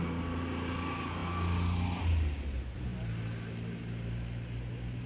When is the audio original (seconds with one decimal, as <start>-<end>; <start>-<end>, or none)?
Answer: 0.0-5.1